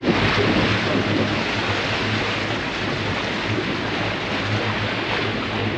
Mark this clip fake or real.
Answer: real